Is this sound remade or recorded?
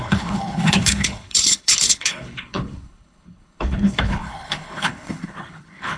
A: remade